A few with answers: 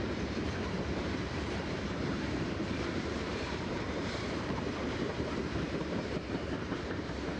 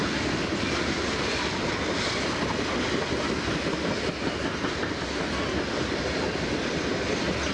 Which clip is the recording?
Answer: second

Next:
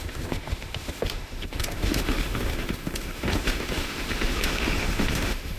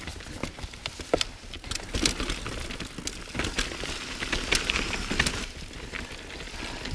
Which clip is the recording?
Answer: second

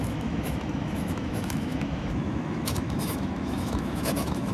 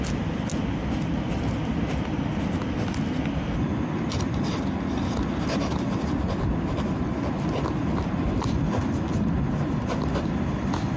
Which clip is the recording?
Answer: second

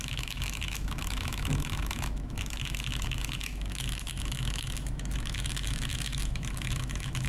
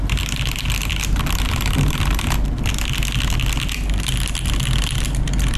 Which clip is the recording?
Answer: second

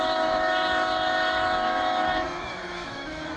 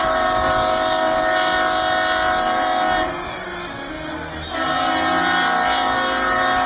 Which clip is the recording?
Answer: second